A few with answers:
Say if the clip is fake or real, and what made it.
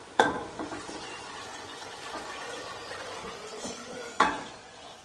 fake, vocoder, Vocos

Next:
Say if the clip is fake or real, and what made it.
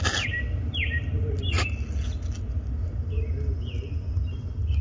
real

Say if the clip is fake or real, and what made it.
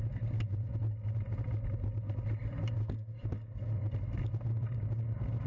real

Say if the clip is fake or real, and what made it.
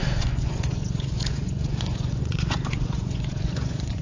fake, vocoder, Vocos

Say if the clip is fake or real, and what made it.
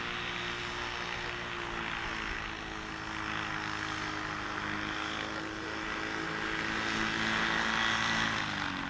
real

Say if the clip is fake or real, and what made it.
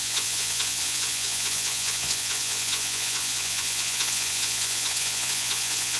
fake, vocoder, Vocos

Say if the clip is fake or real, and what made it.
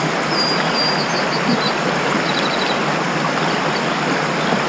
real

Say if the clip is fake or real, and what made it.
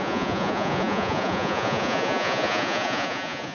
fake, vocoder, Vocos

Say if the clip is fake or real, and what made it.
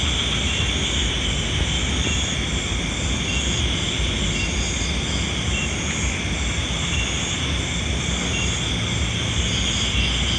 real